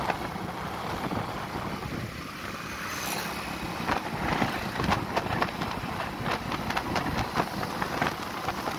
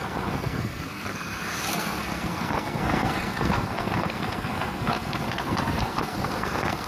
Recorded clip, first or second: first